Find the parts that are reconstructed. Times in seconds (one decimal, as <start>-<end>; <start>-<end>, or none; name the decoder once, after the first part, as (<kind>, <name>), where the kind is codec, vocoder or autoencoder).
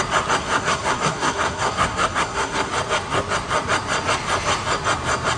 0.4-2.7 (codec, SNAC)